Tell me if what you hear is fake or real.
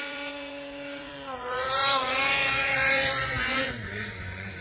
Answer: fake